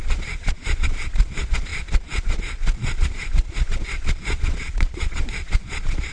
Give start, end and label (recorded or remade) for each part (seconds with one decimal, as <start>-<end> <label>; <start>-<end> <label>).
0.0-6.1 remade